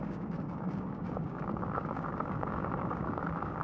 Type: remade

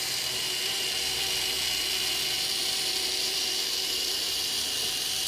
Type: remade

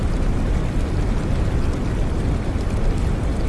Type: remade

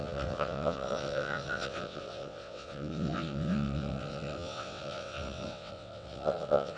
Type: remade